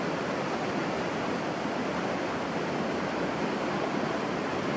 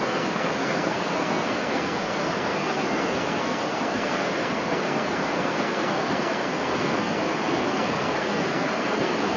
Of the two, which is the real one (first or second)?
first